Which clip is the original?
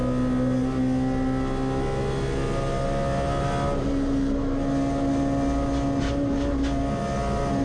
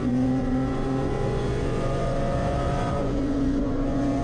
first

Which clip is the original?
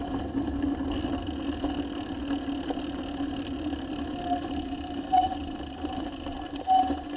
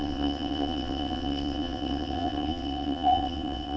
first